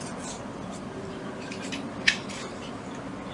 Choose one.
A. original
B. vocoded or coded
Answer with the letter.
A